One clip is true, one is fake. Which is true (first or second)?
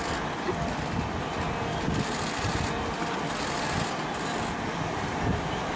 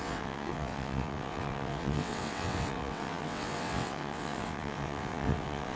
first